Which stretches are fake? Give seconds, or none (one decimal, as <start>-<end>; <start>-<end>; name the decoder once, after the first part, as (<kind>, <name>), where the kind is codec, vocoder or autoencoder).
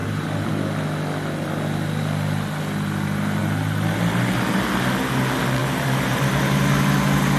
0.0-0.5 (vocoder, BigVGAN v2); 5.6-6.3